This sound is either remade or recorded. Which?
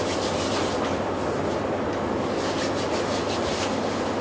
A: recorded